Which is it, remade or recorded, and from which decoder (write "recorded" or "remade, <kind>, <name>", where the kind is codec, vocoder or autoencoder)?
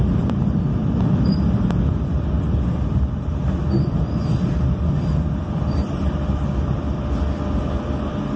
remade, vocoder, BigVGAN v2